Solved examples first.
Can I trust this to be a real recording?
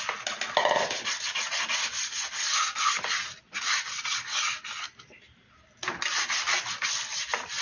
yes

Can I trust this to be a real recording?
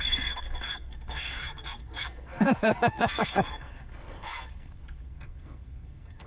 no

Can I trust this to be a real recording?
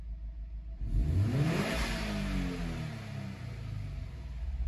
yes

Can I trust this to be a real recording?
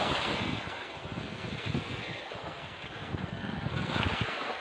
no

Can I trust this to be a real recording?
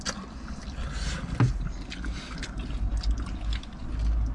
yes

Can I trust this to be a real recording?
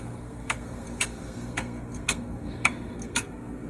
no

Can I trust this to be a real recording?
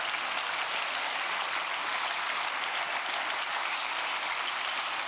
yes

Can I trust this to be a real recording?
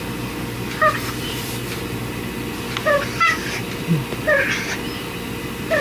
yes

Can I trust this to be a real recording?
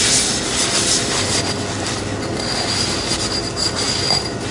yes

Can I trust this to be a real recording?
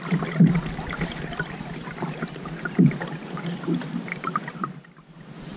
yes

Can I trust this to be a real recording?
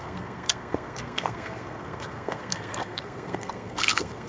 no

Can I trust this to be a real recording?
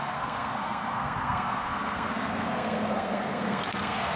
no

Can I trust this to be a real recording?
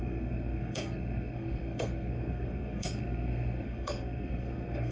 no